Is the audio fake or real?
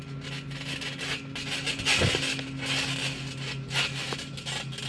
real